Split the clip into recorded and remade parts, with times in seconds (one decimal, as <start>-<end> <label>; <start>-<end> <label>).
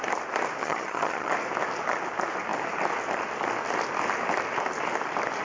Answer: 0.0-0.6 recorded; 0.6-1.3 remade; 1.3-5.4 recorded